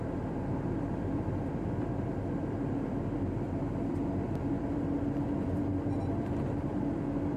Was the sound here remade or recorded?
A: remade